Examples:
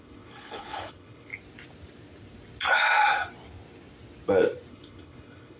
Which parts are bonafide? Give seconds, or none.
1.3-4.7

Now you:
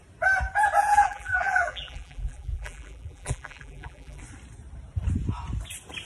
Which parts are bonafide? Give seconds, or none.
0.0-0.8; 4.2-6.0

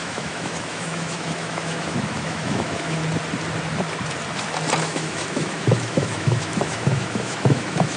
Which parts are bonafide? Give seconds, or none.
3.0-4.8

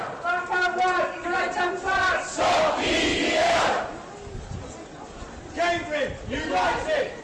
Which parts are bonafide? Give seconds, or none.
0.0-3.1; 3.8-7.2

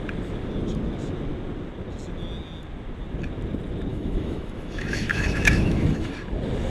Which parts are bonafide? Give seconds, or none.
0.0-3.9; 6.1-6.7